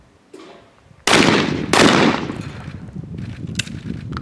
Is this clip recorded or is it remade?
recorded